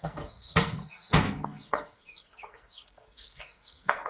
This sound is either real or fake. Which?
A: fake